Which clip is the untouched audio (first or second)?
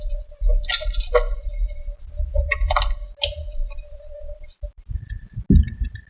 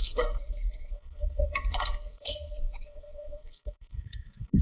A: first